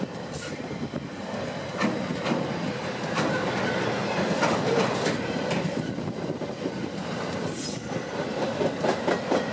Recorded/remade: remade